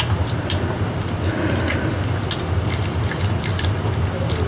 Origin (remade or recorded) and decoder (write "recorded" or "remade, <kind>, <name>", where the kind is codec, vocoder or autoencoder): recorded